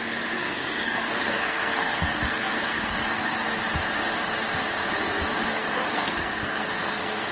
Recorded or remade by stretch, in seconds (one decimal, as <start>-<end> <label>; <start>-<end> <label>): 0.0-0.4 recorded; 0.4-3.4 remade; 3.4-5.5 recorded; 5.5-7.3 remade